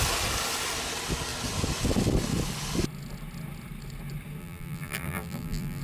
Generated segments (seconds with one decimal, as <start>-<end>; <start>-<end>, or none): 4.4-5.8